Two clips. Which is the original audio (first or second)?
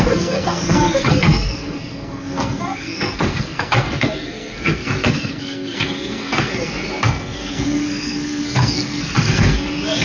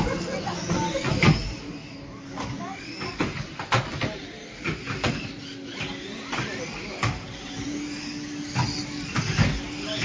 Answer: second